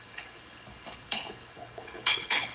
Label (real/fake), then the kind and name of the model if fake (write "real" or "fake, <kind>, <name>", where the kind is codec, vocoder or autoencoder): fake, codec, HILCodec